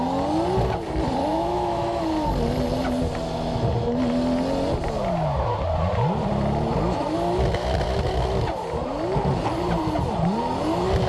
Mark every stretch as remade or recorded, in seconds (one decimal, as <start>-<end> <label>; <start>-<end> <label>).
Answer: 0.0-1.3 recorded; 1.3-2.0 remade; 2.0-11.1 recorded